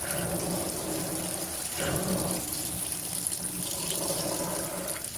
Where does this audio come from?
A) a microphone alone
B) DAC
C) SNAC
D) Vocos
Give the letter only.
A